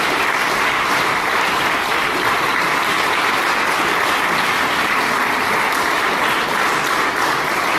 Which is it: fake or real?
real